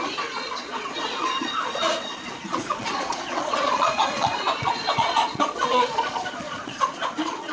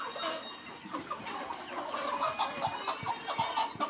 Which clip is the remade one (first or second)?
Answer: first